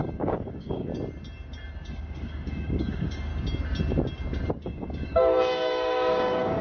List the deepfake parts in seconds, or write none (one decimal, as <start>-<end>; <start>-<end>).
0.0-0.9; 1.9-3.3; 4.5-6.6